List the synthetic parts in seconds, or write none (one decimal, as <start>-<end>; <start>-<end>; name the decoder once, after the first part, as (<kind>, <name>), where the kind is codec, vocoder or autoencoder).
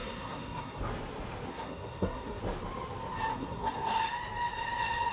0.0-0.8 (codec, SNAC); 1.5-2.4; 3.3-4.0